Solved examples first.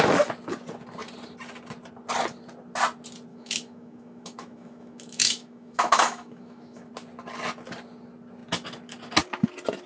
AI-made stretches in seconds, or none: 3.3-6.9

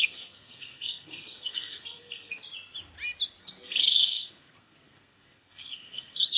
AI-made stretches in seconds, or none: 0.0-2.4; 3.4-6.4

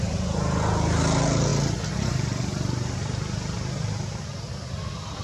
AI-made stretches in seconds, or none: none

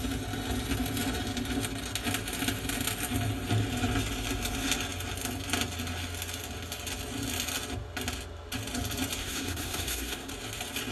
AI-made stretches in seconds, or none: 9.2-10.3